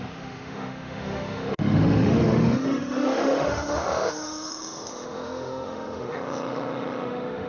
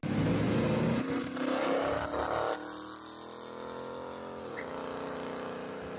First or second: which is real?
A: second